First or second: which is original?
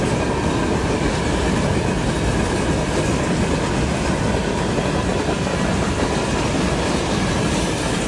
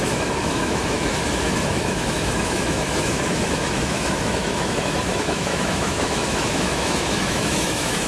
first